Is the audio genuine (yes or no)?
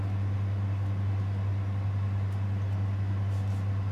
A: yes